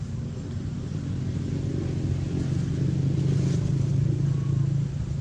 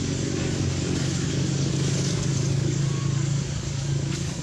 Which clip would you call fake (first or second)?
second